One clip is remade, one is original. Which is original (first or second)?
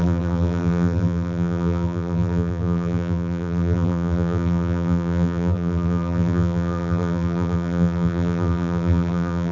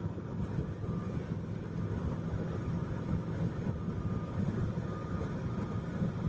second